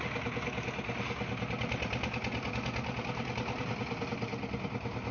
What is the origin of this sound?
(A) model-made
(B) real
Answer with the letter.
B